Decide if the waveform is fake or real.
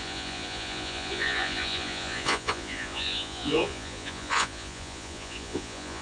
fake